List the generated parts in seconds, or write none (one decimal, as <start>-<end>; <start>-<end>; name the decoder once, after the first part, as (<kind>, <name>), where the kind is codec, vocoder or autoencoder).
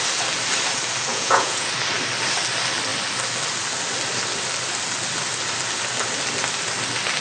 1.1-1.7 (vocoder, Vocos)